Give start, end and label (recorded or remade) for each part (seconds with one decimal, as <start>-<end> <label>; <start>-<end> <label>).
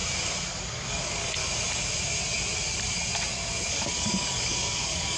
0.0-0.7 recorded; 0.7-1.4 remade; 1.4-3.7 recorded; 3.7-5.2 remade